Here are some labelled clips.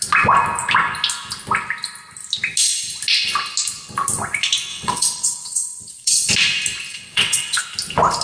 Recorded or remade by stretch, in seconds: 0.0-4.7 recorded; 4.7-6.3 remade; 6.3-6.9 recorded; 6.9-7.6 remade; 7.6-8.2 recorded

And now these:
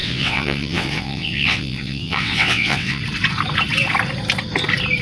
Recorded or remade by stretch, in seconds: 0.0-3.0 remade; 3.0-5.0 recorded

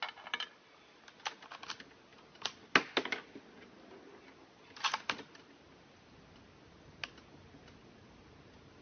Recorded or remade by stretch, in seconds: 0.0-8.8 recorded